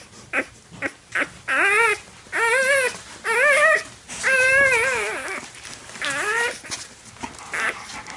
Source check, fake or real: real